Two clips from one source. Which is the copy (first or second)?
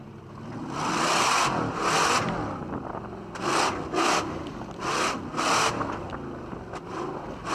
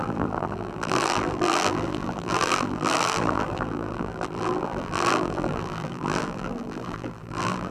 second